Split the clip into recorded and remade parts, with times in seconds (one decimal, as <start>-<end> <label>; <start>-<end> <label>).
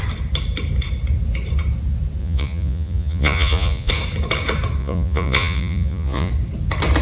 0.0-2.2 recorded; 2.2-3.9 remade; 3.9-4.8 recorded; 4.8-6.3 remade; 6.3-7.0 recorded